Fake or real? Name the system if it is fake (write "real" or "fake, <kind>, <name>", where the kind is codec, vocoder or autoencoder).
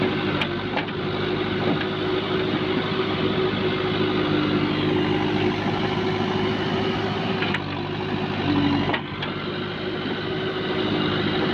real